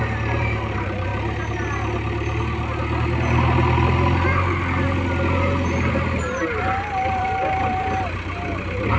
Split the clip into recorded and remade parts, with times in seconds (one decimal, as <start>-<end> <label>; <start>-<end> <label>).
0.0-1.1 remade; 1.1-5.9 recorded; 5.9-9.0 remade